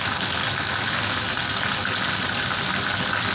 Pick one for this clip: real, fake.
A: real